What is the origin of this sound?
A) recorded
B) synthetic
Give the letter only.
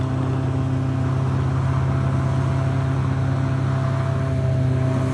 A